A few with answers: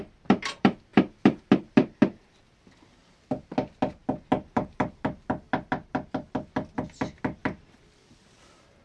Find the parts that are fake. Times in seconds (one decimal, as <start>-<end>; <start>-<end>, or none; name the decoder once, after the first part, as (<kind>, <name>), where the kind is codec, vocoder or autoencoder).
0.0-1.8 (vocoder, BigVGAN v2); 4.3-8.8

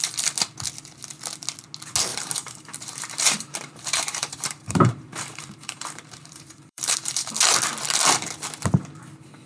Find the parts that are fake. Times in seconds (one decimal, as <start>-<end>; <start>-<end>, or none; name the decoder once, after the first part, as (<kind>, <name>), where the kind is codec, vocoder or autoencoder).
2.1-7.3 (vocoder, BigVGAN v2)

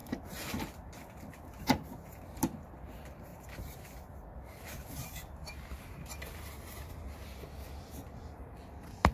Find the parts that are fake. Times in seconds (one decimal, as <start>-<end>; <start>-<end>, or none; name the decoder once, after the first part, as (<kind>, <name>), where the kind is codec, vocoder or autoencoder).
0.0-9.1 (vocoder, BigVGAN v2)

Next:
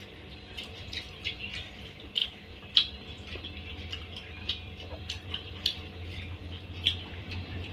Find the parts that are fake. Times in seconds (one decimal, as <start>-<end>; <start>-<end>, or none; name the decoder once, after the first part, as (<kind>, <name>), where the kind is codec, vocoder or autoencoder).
0.0-6.4 (vocoder, BigVGAN v2); 7.1-7.7

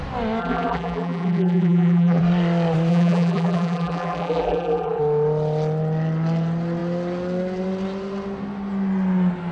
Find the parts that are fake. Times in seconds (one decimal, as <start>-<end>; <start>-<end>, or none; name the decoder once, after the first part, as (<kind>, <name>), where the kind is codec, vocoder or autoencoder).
0.4-2.2 (vocoder, BigVGAN v2); 2.9-5.0